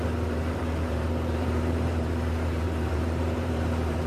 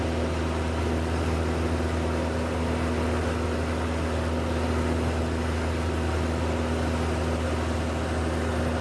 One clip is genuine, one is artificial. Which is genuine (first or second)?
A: second